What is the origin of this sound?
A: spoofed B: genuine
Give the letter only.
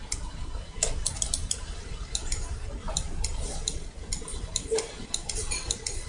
B